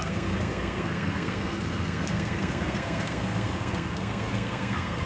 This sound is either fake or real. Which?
fake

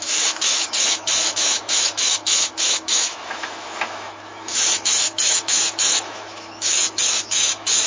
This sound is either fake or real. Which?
fake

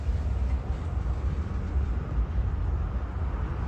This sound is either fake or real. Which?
real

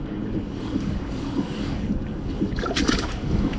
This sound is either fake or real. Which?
fake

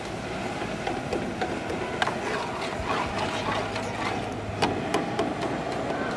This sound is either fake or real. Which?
real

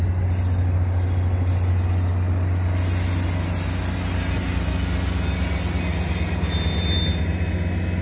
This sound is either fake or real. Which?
real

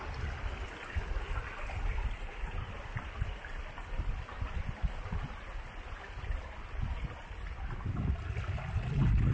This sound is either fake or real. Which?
real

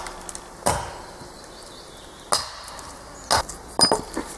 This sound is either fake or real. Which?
real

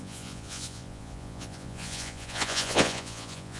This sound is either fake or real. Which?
fake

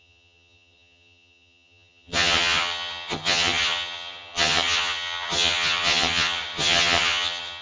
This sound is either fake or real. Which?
fake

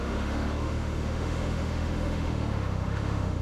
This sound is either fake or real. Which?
fake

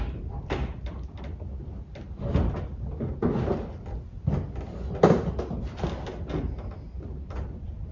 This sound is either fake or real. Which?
real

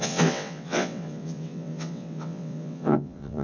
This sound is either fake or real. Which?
fake